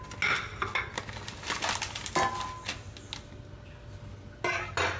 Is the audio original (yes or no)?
yes